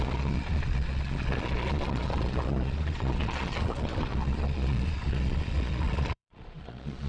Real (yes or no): no